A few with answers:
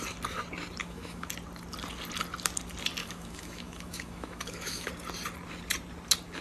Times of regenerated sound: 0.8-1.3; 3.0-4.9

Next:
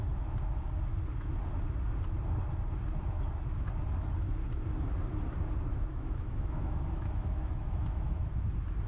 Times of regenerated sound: 5.7-8.3

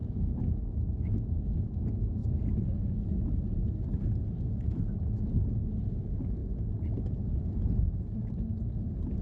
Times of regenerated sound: 0.0-1.2

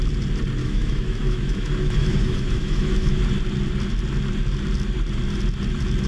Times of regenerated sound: 0.6-3.2

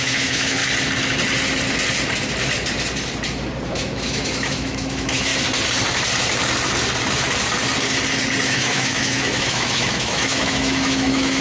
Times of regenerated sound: 0.0-0.6; 3.7-5.3; 8.5-11.4

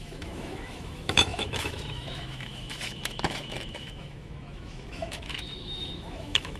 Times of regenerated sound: 0.0-6.6

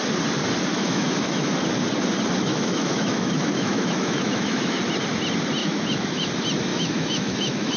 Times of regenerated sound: 0.7-1.5; 2.5-4.8; 5.6-6.3; 6.7-7.8

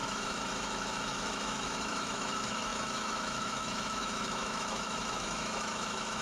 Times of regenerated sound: 0.0-6.2